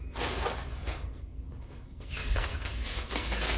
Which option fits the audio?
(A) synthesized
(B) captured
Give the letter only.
A